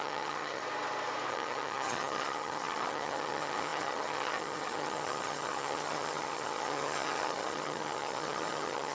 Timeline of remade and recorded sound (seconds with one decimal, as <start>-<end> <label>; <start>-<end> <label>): 0.0-0.6 remade; 0.6-1.3 recorded; 1.3-8.9 remade

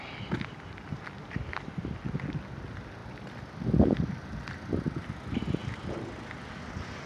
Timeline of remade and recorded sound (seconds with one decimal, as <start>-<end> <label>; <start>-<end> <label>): 0.0-7.1 recorded

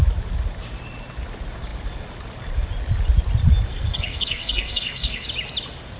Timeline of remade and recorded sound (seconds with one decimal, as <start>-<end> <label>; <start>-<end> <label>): 0.0-3.7 recorded; 3.7-5.3 remade; 5.3-6.0 recorded

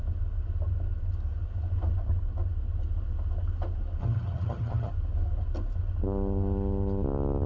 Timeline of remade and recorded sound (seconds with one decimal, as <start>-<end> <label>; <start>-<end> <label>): 0.0-4.0 recorded; 4.0-4.9 remade; 4.9-7.5 recorded

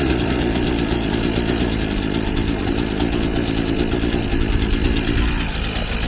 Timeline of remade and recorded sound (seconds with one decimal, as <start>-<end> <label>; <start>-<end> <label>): 0.0-6.1 recorded

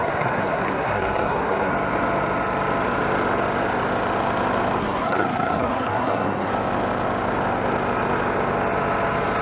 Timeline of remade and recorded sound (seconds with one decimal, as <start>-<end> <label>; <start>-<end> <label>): 0.0-1.7 remade; 1.7-4.8 recorded; 4.8-6.5 remade; 6.5-9.4 recorded

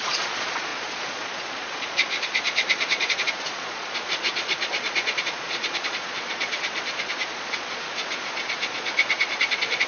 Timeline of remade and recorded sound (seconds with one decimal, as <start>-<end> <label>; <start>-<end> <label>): 0.0-9.9 remade

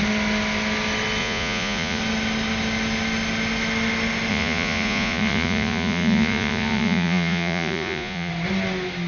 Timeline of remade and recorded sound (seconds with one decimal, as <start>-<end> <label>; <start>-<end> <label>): 0.0-1.2 recorded; 1.2-2.0 remade; 2.0-4.3 recorded; 4.3-8.3 remade; 8.3-9.1 recorded